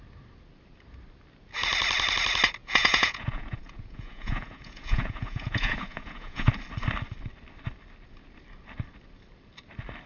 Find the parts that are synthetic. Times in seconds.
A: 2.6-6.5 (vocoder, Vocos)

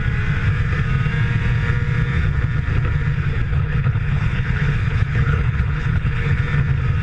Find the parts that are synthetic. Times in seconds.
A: 3.5-6.4 (codec, HILCodec)

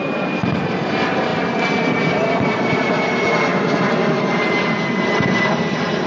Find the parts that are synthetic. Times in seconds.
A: 1.3-2.9 (vocoder, BigVGAN v2)

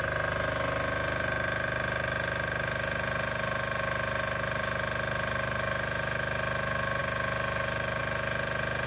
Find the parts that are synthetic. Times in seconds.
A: none